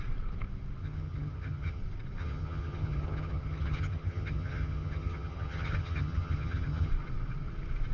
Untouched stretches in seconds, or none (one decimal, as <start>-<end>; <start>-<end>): 0.0-0.8; 1.8-2.2; 6.9-7.9